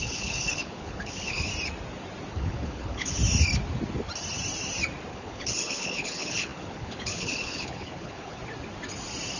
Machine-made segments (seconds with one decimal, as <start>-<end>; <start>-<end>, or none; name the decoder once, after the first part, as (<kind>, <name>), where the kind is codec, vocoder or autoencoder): 0.0-1.5 (codec, HILCodec); 2.3-3.2; 5.1-8.4